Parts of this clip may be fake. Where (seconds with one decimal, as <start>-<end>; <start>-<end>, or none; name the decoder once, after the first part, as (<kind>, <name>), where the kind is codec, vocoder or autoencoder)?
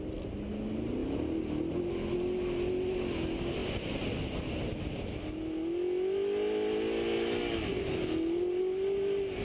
none